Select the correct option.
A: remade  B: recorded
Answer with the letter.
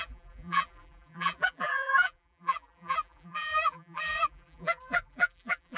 A